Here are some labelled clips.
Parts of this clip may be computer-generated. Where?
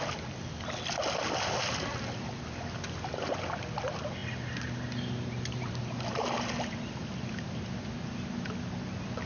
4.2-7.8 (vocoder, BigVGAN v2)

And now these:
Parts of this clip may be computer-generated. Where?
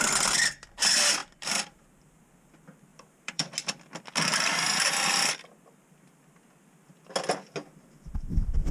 1.2-2.2 (vocoder, BigVGAN v2); 2.9-3.5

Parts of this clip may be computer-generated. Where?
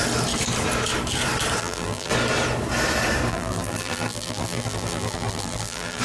1.6-2.1 (vocoder, BigVGAN v2); 3.3-6.0